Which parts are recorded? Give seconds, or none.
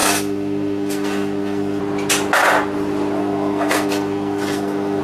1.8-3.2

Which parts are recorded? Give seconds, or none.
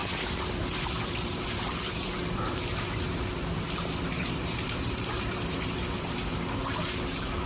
none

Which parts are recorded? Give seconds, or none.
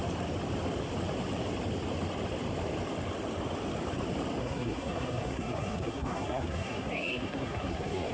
0.0-4.4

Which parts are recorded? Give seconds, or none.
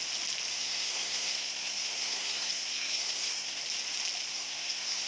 0.0-0.5; 3.6-4.3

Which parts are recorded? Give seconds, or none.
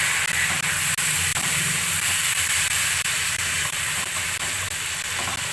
0.0-1.3; 4.6-5.5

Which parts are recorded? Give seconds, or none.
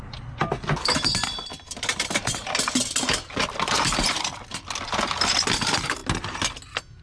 0.0-7.0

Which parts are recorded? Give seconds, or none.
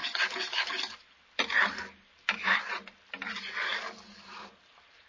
none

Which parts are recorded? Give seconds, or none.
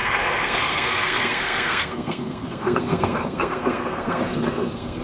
none